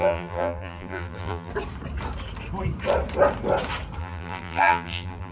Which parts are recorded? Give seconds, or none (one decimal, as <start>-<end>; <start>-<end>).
1.5-4.0